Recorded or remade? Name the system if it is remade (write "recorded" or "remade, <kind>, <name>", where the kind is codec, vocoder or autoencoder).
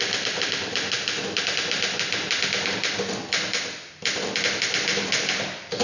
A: recorded